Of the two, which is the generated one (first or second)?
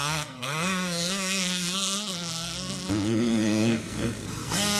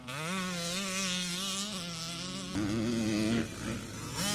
first